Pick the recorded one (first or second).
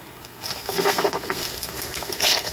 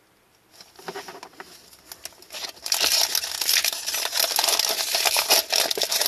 second